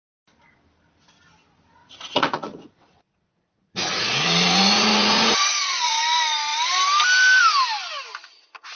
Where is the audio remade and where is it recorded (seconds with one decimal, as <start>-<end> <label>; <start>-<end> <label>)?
0.0-1.8 recorded; 1.8-6.0 remade; 6.0-8.8 recorded